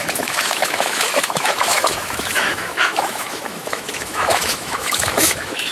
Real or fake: fake